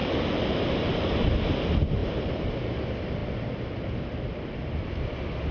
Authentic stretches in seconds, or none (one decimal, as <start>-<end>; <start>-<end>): 1.3-2.0; 2.8-5.5